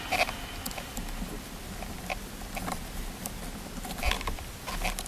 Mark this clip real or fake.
real